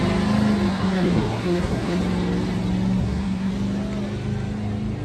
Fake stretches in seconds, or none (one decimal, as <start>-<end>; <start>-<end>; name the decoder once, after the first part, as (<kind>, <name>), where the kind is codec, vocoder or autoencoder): 0.7-2.0 (codec, SNAC); 3.0-3.5

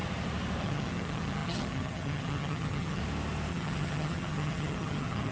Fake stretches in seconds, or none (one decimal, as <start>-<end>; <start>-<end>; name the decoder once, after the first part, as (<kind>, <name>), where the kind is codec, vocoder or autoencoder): 0.6-3.0 (vocoder, HiFi-GAN); 3.5-5.3

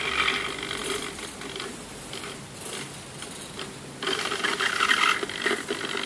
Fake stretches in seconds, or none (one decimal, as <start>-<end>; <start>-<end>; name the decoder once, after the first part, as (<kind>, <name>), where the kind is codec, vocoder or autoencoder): none

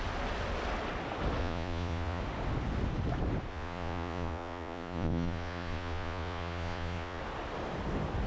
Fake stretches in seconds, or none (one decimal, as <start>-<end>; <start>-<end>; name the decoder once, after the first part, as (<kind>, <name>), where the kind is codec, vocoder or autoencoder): 1.4-2.2 (vocoder, Vocos); 3.5-7.2

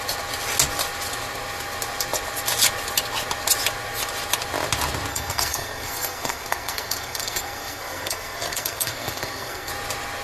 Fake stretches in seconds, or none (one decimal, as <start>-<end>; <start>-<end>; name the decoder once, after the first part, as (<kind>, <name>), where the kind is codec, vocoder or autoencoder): 5.1-9.7 (codec, SNAC)